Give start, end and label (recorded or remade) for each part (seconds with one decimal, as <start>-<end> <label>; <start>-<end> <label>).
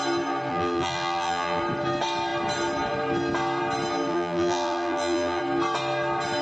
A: 0.0-0.5 recorded; 0.5-1.6 remade; 1.6-4.1 recorded; 4.1-5.4 remade; 5.4-6.4 recorded